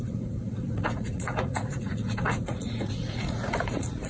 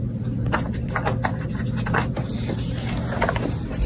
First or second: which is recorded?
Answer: second